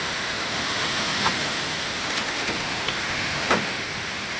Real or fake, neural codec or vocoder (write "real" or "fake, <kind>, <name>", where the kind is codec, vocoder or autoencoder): fake, autoencoder, DAC-VAE